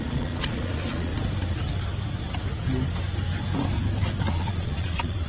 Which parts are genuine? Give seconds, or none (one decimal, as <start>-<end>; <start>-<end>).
1.1-4.3